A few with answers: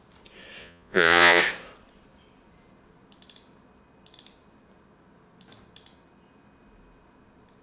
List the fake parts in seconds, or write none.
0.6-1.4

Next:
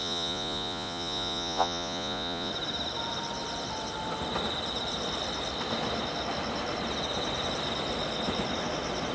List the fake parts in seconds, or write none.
0.0-2.5

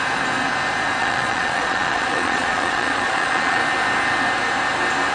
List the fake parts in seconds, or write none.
1.0-3.6